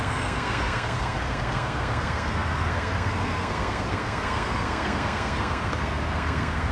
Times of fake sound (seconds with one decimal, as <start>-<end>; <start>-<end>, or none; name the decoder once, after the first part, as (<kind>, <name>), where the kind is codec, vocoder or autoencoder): 0.0-6.7 (codec, SNAC)